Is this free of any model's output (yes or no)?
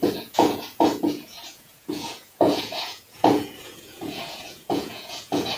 no